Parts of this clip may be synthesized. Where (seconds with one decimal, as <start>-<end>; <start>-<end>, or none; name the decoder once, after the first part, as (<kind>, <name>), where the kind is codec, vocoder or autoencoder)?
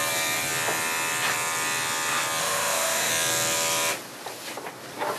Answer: 2.4-3.1 (autoencoder, DAC-VAE)